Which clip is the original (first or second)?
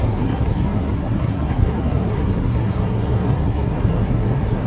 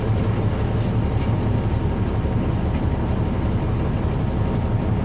second